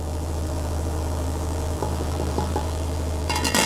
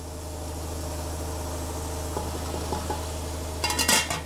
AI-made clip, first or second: first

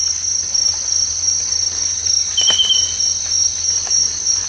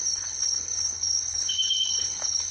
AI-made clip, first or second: second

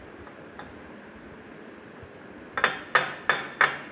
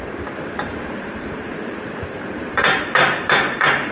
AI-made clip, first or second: second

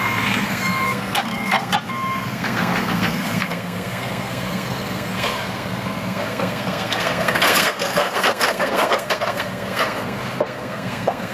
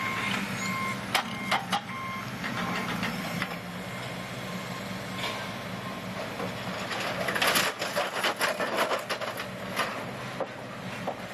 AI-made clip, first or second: first